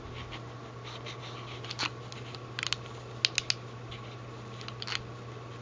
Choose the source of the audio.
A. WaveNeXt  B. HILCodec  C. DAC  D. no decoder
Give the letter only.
D